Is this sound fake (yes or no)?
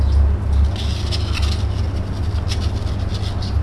no